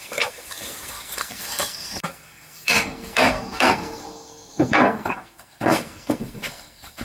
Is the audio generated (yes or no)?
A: yes